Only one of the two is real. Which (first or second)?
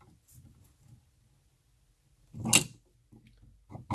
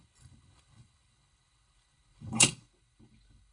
first